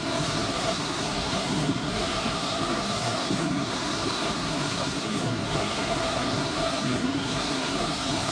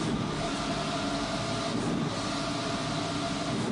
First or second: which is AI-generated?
first